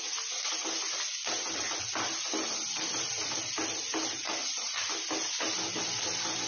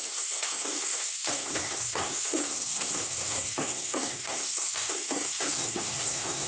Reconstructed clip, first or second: second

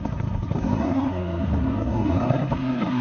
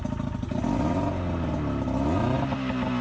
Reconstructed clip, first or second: first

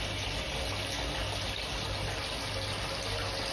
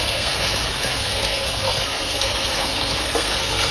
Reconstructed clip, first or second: second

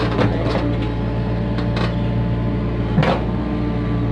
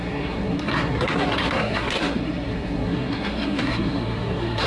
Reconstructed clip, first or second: second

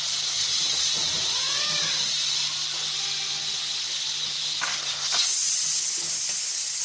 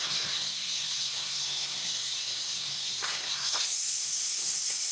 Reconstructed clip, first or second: second